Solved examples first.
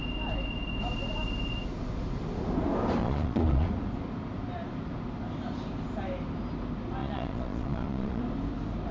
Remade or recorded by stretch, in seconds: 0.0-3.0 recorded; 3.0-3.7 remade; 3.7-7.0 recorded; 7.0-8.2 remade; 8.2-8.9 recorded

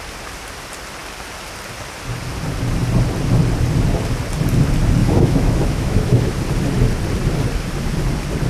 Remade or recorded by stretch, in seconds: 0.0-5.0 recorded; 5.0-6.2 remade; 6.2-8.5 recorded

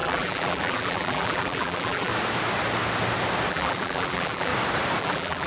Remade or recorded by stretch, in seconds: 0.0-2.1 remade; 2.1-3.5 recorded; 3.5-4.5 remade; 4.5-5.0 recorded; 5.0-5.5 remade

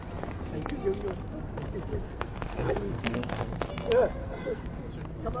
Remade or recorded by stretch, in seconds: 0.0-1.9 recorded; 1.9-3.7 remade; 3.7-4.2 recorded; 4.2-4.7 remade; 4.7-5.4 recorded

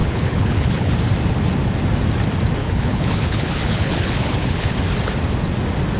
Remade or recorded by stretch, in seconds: 0.0-0.9 remade; 0.9-2.6 recorded; 2.6-4.7 remade; 4.7-6.0 recorded

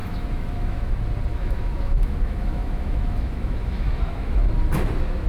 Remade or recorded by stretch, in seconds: 0.0-0.9 remade; 0.9-1.3 recorded; 1.3-4.4 remade; 4.4-5.3 recorded